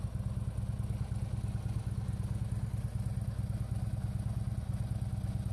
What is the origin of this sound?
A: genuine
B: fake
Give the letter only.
A